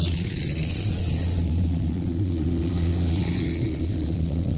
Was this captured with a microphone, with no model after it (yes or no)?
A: no